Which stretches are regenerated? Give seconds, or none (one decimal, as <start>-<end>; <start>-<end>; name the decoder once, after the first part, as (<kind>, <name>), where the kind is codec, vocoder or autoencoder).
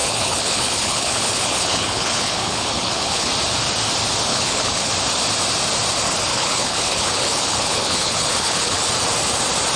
0.0-3.3 (codec, HILCodec); 4.3-4.9; 6.3-8.9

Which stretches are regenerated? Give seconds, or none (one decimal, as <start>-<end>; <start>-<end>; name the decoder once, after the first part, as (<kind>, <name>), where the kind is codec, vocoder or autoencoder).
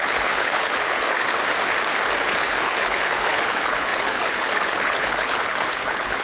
0.0-1.4 (codec, HILCodec); 2.2-6.2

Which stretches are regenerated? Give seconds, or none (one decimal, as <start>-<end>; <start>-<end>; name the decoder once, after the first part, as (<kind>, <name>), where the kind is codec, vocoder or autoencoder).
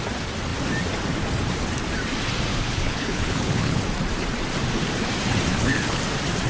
2.5-3.8 (codec, HILCodec); 5.5-6.0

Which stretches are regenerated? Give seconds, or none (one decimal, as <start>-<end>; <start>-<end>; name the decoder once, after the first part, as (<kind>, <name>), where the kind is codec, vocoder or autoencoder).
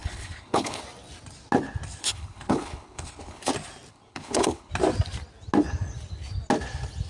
0.0-0.8 (codec, HILCodec); 2.0-3.5; 3.9-4.7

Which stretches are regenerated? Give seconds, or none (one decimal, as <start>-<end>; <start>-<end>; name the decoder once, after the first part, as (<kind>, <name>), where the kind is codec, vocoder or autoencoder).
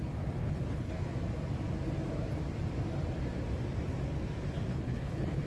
0.4-0.9 (codec, HILCodec); 4.7-5.5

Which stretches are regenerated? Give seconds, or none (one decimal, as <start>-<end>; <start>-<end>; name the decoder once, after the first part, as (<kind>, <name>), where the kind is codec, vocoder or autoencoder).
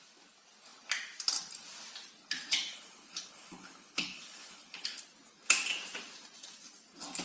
2.7-5.0 (codec, HILCodec)